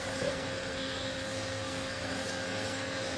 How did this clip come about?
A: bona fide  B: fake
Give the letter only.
B